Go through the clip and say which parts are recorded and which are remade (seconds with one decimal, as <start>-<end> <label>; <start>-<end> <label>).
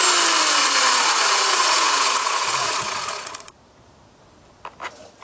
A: 0.0-0.6 recorded; 0.6-3.5 remade; 3.5-5.2 recorded